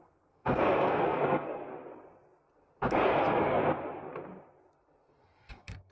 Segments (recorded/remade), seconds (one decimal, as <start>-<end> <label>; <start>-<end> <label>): 0.0-1.7 remade; 1.7-3.2 recorded; 3.2-3.6 remade; 3.6-5.5 recorded; 5.5-5.9 remade